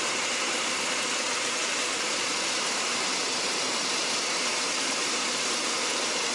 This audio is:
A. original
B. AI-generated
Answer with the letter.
B